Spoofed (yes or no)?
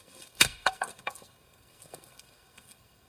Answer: yes